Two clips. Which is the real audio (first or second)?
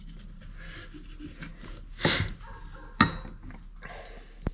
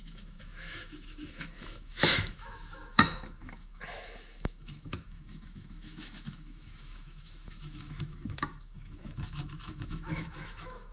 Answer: first